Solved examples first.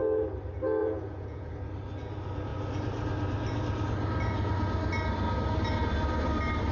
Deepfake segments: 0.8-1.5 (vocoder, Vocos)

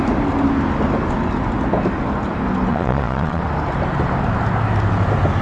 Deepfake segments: 2.7-3.4 (vocoder, Vocos)

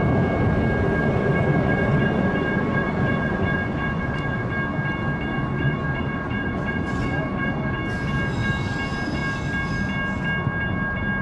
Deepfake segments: 1.0-4.5 (vocoder, Vocos); 5.3-7.8

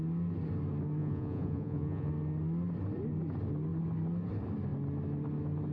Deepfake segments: 1.0-2.1 (vocoder, Vocos)

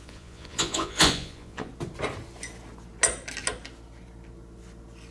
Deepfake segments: 0.0-1.7 (vocoder, Vocos)